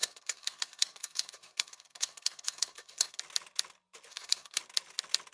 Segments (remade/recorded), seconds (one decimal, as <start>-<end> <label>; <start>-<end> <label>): 0.0-3.2 remade; 3.2-4.1 recorded; 4.1-4.6 remade; 4.6-5.3 recorded